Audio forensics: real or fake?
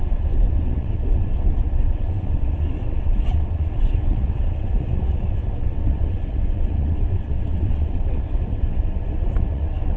fake